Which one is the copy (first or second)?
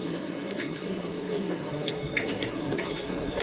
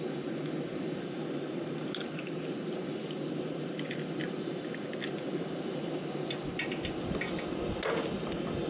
first